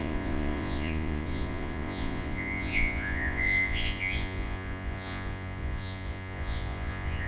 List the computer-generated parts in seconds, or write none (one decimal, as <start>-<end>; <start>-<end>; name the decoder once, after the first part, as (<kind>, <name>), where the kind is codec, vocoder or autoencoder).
0.0-7.3 (vocoder, Vocos)